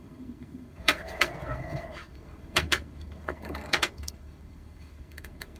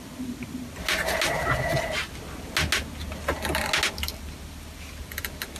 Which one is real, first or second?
second